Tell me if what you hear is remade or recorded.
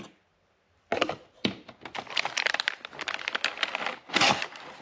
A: recorded